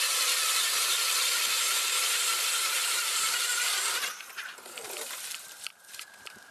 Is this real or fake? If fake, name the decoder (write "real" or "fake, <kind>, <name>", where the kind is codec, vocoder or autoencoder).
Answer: fake, vocoder, BigVGAN v2